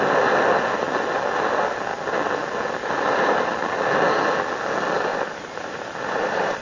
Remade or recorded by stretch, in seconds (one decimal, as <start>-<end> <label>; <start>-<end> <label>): 0.0-5.1 recorded; 5.1-6.6 remade